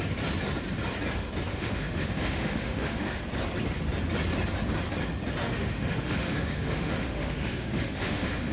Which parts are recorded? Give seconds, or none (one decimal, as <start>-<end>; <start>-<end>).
0.0-1.5; 3.2-5.4